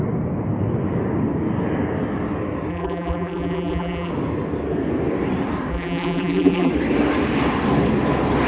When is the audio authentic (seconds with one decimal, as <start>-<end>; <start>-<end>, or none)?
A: 0.0-2.7; 4.1-5.7; 6.7-8.5